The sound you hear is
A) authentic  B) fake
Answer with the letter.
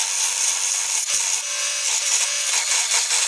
A